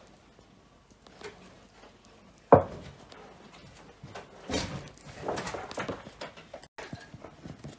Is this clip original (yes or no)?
yes